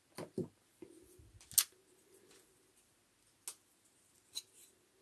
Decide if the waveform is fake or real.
real